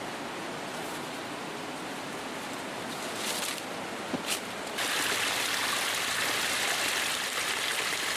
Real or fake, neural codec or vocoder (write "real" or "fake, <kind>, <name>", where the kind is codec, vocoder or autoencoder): real